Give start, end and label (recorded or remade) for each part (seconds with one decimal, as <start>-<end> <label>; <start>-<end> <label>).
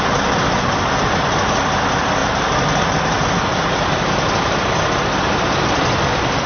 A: 0.0-6.5 recorded